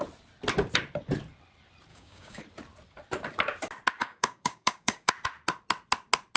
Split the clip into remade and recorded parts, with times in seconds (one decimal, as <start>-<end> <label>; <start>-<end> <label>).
0.0-1.9 recorded; 1.9-2.4 remade; 2.4-4.0 recorded; 4.0-5.1 remade; 5.1-6.4 recorded